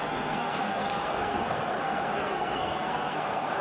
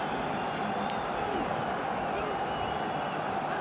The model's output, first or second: first